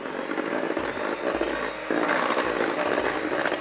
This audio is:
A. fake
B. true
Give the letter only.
B